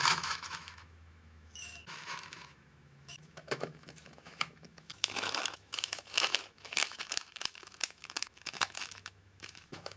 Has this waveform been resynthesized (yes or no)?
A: yes